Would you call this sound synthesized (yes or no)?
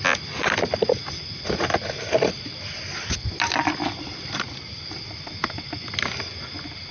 no